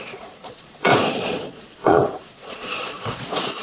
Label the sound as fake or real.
fake